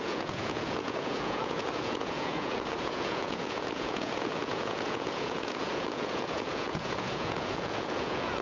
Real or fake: fake